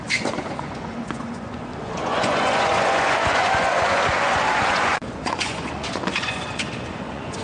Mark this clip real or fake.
fake